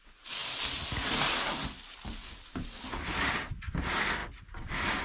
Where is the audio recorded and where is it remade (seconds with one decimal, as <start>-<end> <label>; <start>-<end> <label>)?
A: 0.0-5.0 recorded